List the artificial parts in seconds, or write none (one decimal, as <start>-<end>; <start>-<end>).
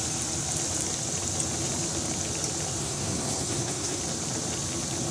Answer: 2.8-4.0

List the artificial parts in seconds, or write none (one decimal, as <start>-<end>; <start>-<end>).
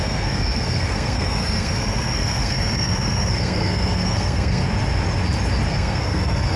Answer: 0.0-4.6; 5.7-6.6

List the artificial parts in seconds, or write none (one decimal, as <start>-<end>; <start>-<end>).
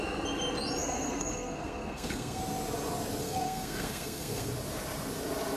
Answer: 0.8-2.4; 3.2-4.5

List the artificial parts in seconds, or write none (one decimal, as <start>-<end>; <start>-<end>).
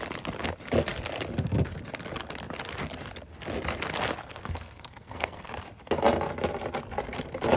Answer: 4.2-5.5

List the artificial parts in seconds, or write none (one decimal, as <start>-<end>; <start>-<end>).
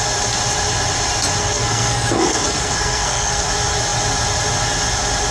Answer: 1.4-3.5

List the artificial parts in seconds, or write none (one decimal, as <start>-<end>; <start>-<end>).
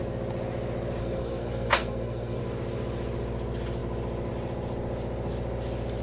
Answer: 1.0-2.4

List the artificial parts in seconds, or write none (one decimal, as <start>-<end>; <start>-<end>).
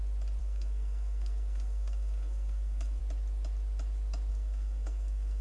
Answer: 0.4-3.0; 4.3-5.4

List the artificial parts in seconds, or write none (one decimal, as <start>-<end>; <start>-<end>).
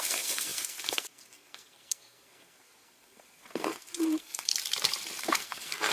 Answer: 0.0-4.5; 5.2-5.9